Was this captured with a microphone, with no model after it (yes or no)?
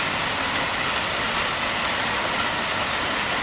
yes